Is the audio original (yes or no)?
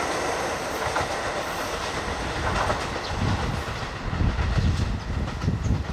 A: yes